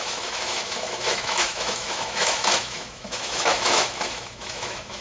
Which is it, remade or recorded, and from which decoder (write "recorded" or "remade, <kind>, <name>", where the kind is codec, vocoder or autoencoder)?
remade, autoencoder, DAC-VAE